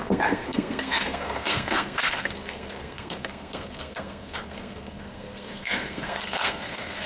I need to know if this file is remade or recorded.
remade